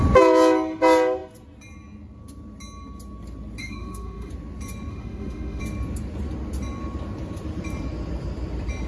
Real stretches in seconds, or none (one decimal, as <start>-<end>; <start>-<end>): 0.0-3.6; 4.3-4.9; 5.6-8.9